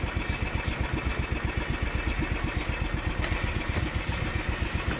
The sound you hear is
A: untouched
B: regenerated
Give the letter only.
A